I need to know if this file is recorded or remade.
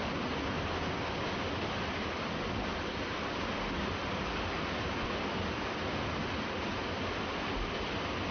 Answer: recorded